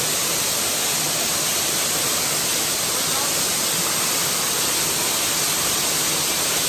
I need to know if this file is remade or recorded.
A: recorded